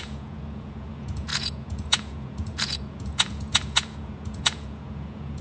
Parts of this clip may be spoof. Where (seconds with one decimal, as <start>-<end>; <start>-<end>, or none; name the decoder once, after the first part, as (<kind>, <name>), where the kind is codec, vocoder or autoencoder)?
0.0-5.4 (vocoder, Vocos)